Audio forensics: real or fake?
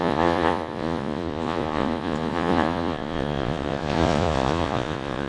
fake